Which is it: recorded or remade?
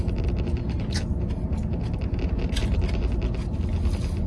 recorded